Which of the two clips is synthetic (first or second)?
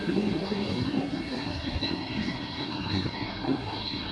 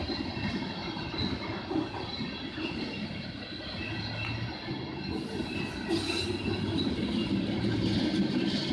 first